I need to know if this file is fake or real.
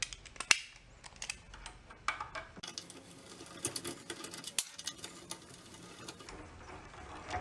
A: real